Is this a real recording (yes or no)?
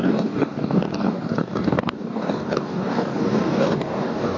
no